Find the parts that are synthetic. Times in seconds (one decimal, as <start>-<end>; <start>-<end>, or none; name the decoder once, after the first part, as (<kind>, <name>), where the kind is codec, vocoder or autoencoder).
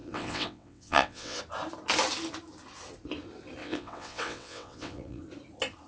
0.0-1.4 (vocoder, WaveNeXt); 3.6-5.2